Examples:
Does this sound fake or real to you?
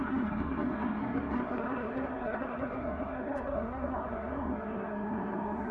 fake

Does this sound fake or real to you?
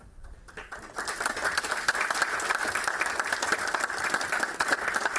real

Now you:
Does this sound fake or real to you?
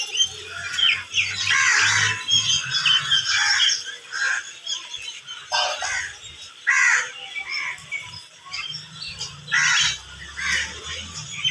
real